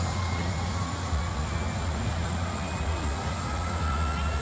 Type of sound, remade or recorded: remade